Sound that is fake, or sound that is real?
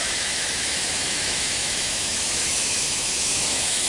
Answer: fake